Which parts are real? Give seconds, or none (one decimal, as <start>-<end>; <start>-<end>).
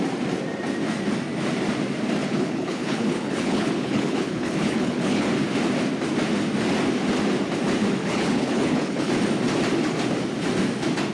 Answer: 0.0-2.2; 5.3-8.0; 9.1-11.1